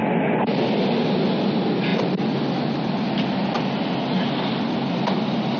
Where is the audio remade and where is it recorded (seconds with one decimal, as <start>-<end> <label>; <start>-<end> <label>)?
0.0-5.6 recorded